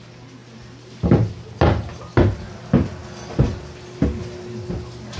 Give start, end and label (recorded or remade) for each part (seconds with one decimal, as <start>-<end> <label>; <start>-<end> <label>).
0.0-5.2 recorded